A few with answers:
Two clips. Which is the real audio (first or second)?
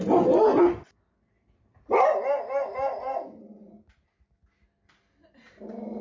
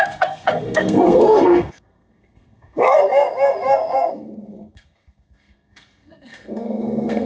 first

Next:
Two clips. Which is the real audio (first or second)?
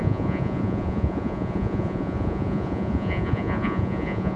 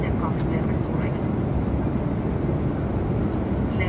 second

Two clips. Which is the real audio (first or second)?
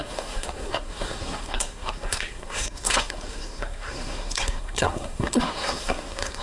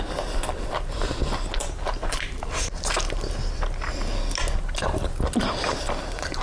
second